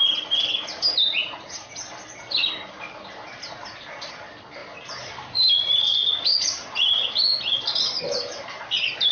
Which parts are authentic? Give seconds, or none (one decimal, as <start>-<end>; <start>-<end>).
0.0-1.2; 1.8-9.1